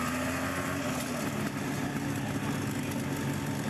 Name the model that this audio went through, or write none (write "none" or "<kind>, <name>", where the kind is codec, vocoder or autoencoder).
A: none